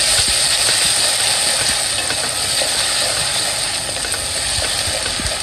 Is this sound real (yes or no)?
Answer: yes